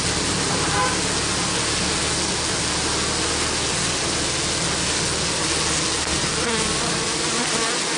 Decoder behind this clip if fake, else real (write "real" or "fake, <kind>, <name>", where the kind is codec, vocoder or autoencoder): real